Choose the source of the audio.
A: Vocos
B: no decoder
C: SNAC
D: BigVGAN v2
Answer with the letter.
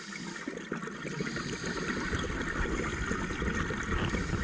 B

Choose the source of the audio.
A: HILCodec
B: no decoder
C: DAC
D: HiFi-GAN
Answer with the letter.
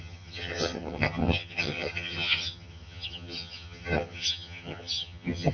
D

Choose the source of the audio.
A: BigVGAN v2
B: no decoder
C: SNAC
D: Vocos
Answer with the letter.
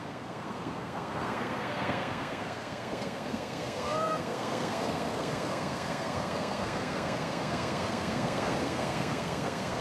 C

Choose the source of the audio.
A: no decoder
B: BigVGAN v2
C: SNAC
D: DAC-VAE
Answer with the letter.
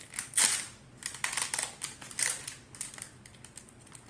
A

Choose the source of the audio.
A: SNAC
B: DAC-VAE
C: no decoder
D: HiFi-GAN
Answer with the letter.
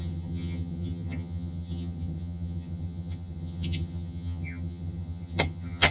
D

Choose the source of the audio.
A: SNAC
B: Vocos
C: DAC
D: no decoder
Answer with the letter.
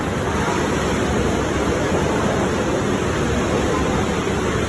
D